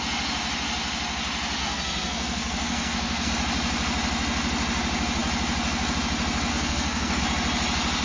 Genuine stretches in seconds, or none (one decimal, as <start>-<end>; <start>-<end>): 0.0-1.6; 3.3-6.5; 7.2-8.0